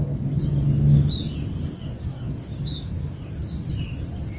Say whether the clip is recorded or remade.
recorded